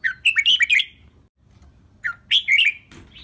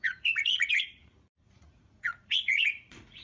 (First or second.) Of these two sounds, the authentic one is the first